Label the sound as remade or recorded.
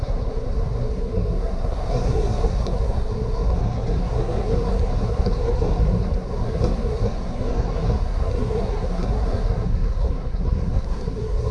remade